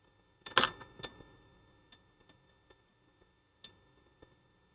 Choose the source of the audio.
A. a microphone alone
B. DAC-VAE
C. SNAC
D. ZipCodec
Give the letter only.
A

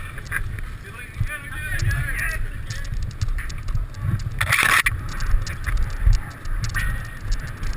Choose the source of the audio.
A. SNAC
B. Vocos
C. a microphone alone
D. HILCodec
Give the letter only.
C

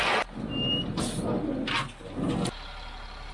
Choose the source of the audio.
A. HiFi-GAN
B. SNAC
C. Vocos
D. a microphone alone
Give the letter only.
D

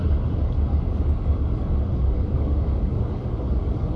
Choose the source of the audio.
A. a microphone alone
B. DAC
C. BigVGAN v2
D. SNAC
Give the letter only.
B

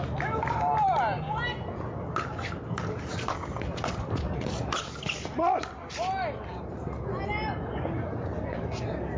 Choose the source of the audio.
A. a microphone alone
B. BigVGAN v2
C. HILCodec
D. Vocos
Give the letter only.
A